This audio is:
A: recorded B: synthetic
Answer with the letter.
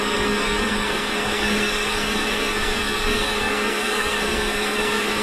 B